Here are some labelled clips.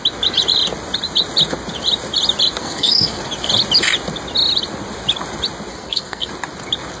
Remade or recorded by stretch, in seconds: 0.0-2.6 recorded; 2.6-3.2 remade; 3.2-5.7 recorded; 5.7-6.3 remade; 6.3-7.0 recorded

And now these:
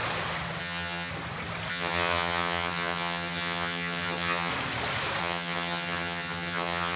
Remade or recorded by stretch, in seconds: 0.0-0.6 recorded; 0.6-1.1 remade; 1.1-1.7 recorded; 1.7-4.5 remade; 4.5-5.2 recorded; 5.2-7.0 remade

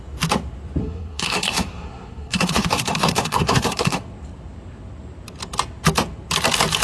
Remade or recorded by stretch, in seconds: 0.0-0.8 recorded; 0.8-4.0 remade; 4.0-6.8 recorded

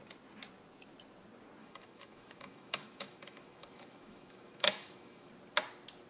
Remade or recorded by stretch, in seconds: 0.0-1.6 recorded; 1.6-5.3 remade; 5.3-6.1 recorded